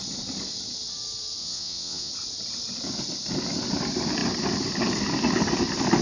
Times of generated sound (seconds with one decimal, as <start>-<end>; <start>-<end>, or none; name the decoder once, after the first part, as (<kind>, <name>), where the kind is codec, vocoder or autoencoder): 1.4-2.1 (vocoder, WaveNeXt)